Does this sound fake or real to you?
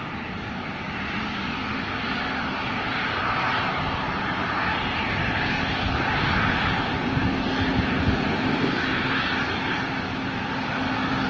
real